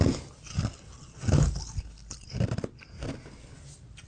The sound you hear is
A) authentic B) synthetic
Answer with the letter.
A